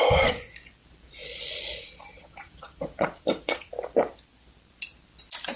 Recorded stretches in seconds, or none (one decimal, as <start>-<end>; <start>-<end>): 0.0-1.2; 3.7-5.6